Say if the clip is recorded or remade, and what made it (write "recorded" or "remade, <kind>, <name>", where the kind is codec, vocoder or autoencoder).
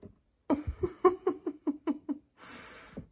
recorded